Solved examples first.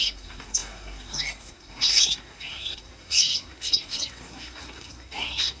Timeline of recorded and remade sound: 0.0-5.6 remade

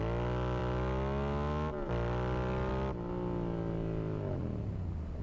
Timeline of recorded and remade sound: 0.0-5.2 recorded

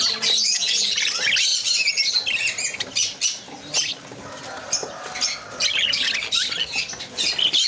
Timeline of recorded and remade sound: 0.0-0.4 recorded; 0.4-1.0 remade; 1.0-7.7 recorded

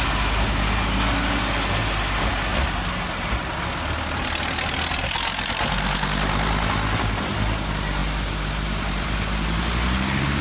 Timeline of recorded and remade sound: 0.0-10.4 recorded

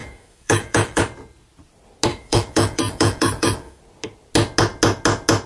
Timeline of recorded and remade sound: 0.0-1.0 remade; 1.0-2.1 recorded; 2.1-3.8 remade; 3.8-5.5 recorded

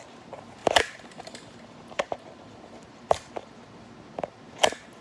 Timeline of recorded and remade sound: 0.0-0.6 recorded; 0.6-3.3 remade; 3.3-5.0 recorded

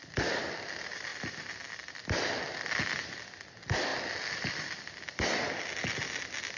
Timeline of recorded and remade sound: 0.0-6.6 recorded

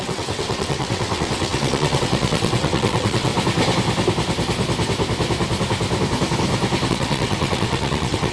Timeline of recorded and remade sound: 0.0-3.3 remade; 3.3-6.9 recorded; 6.9-8.3 remade